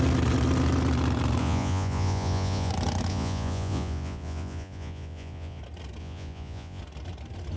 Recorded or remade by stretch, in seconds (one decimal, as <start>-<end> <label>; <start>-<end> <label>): 0.0-1.4 recorded; 1.4-2.7 remade; 2.7-3.1 recorded; 3.1-5.6 remade; 5.6-6.0 recorded; 6.0-6.8 remade; 6.8-7.6 recorded